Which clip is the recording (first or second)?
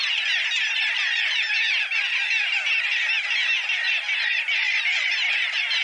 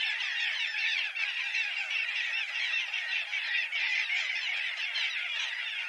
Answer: first